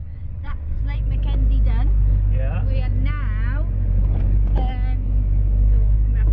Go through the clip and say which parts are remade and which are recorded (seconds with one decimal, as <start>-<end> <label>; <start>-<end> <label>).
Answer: 0.0-0.8 remade; 0.8-6.3 recorded

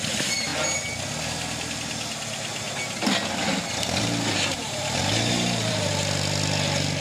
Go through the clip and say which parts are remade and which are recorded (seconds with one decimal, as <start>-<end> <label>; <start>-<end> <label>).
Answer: 0.0-0.5 remade; 0.5-4.0 recorded; 4.0-5.9 remade; 5.9-7.0 recorded

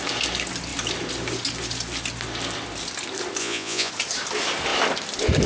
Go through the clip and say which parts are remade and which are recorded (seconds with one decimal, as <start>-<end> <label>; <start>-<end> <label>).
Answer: 0.0-3.4 recorded; 3.4-3.9 remade; 3.9-5.5 recorded

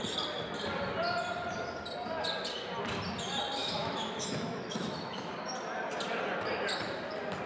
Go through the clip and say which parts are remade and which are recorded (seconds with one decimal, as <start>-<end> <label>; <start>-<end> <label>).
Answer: 0.0-3.6 recorded; 3.6-5.3 remade; 5.3-7.5 recorded

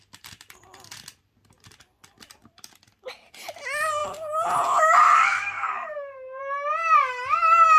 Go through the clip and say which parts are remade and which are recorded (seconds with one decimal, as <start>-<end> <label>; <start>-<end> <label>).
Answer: 0.0-5.0 recorded; 5.0-6.4 remade; 6.4-7.8 recorded

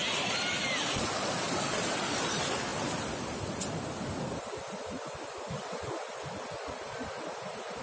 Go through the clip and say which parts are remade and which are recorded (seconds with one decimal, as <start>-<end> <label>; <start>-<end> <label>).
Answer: 0.0-7.8 recorded

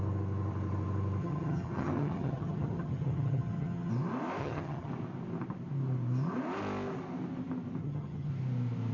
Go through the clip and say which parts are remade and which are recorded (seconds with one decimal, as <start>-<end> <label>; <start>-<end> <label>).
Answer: 0.0-1.2 recorded; 1.2-3.9 remade; 3.9-4.4 recorded; 4.4-4.9 remade; 4.9-7.8 recorded; 7.8-8.3 remade; 8.3-8.9 recorded

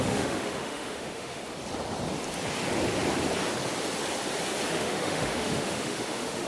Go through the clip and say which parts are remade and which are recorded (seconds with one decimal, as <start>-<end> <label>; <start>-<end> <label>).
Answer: 0.0-1.4 remade; 1.4-4.7 recorded; 4.7-6.5 remade